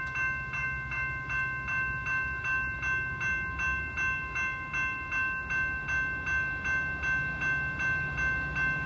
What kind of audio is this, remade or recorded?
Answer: recorded